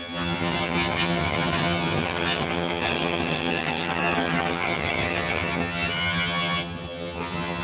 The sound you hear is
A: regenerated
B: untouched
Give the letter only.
A